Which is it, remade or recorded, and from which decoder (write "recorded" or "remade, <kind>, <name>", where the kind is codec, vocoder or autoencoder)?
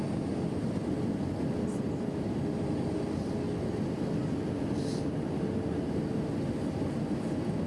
recorded